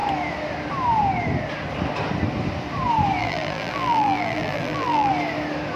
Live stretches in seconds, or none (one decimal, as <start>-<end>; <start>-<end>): 0.0-3.2; 5.1-5.8